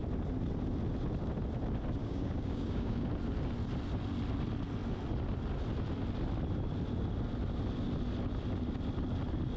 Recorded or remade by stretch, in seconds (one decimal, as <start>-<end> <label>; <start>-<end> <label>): 0.0-2.0 recorded; 2.0-3.1 remade; 3.1-9.6 recorded